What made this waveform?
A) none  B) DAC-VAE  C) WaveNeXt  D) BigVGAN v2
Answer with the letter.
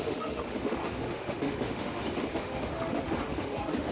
B